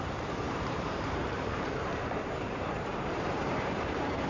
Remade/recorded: remade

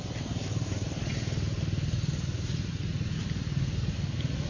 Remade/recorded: recorded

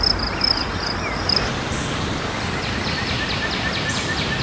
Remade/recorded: remade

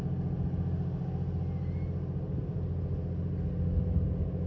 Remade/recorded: recorded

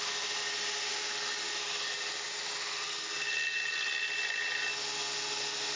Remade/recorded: recorded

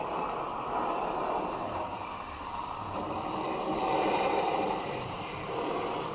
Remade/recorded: remade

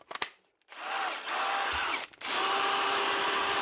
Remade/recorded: recorded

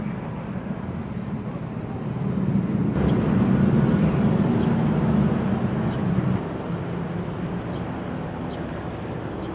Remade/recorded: recorded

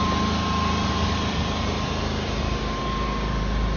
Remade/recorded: remade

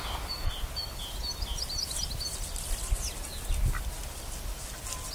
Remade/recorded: recorded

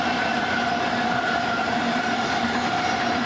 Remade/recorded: remade